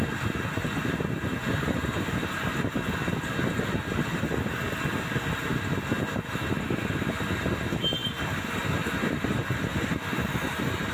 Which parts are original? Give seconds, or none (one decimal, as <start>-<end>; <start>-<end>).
0.0-10.9